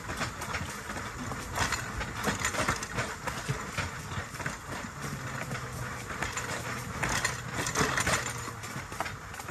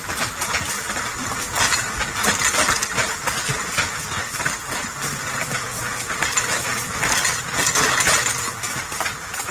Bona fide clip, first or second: first